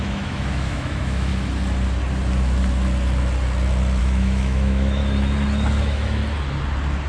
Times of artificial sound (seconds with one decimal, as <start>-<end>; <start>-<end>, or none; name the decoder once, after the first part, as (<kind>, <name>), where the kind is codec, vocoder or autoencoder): 0.0-1.3 (autoencoder, DAC-VAE); 4.0-5.0; 5.8-6.2